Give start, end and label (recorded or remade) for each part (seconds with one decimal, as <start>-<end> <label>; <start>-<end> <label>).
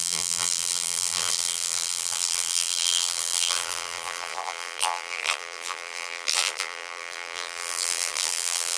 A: 0.0-8.8 remade